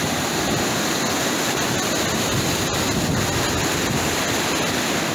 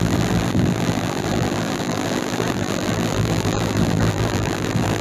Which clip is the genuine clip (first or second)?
first